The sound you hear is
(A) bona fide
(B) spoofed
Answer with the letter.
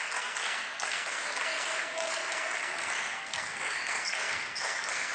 B